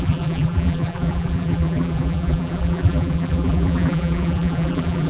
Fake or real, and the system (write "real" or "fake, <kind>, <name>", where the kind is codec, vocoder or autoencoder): fake, vocoder, BigVGAN v2